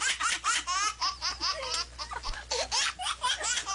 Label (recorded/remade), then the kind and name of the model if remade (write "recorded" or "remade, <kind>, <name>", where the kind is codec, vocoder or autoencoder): recorded